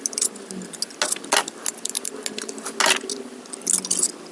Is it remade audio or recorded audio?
recorded